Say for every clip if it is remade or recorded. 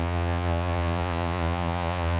remade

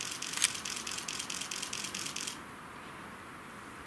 recorded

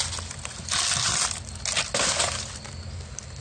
recorded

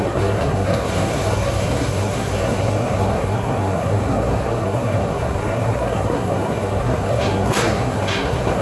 remade